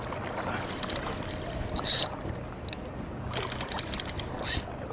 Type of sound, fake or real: real